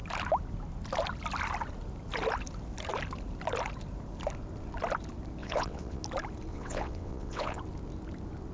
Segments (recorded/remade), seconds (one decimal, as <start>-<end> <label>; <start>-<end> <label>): 0.0-5.4 recorded; 5.4-6.0 remade; 6.0-6.5 recorded; 6.5-7.6 remade; 7.6-8.5 recorded

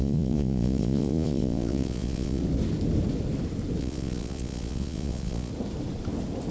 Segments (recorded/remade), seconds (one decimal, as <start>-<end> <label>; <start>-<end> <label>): 0.0-2.4 remade; 2.4-3.8 recorded; 3.8-5.5 remade; 5.5-6.5 recorded

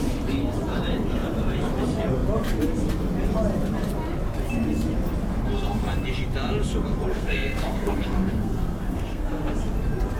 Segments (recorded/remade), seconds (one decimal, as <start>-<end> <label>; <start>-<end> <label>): 0.0-7.1 recorded; 7.1-9.6 remade; 9.6-10.2 recorded

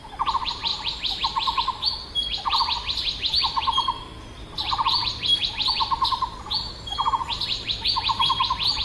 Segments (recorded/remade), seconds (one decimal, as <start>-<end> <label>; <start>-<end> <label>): 0.0-8.8 recorded